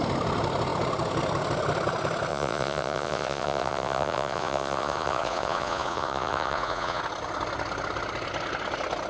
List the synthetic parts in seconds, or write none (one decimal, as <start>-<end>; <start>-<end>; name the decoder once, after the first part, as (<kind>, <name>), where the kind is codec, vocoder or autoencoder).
2.3-7.0 (vocoder, Vocos)

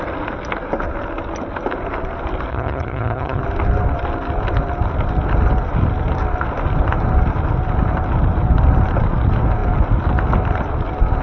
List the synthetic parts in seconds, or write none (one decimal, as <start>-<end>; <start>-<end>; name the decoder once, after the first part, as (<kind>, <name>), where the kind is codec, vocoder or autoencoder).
2.5-3.4 (vocoder, HiFi-GAN)

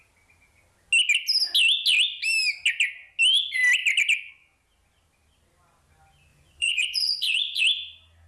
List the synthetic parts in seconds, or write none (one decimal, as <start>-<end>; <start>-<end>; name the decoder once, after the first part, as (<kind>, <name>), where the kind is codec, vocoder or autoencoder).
6.3-7.6 (vocoder, Vocos)